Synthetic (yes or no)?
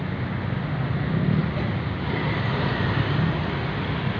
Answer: no